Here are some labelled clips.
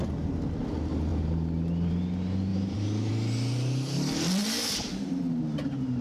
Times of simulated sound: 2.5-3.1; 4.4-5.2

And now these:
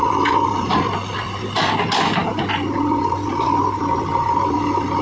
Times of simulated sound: none